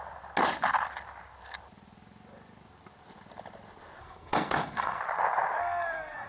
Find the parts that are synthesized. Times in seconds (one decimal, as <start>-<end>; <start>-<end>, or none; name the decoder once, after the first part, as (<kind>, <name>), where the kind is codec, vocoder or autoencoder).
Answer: 4.0-5.0 (codec, SNAC); 5.6-6.3